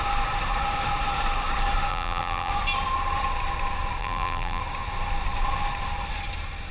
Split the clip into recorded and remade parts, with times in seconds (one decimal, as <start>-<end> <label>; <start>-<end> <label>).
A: 0.0-1.9 recorded; 1.9-2.5 remade; 2.5-4.0 recorded; 4.0-4.6 remade; 4.6-6.7 recorded